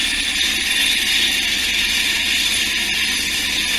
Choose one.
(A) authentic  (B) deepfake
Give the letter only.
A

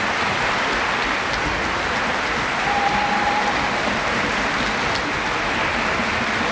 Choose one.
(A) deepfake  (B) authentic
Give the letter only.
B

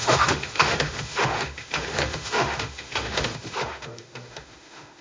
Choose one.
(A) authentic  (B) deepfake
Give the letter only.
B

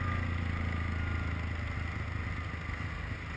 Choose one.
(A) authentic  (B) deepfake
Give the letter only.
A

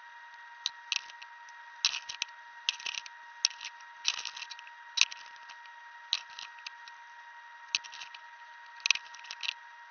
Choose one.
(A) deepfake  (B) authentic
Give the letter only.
B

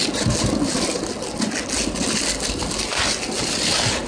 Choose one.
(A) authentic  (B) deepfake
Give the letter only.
A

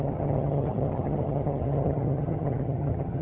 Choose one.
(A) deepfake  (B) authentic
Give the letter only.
A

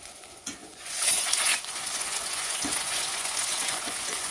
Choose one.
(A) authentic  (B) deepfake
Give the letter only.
B